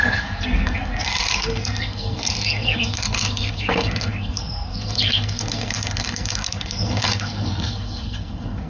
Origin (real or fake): fake